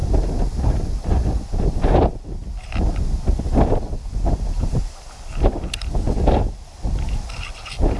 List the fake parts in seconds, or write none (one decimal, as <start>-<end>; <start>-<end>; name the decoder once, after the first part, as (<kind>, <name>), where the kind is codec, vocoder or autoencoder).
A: none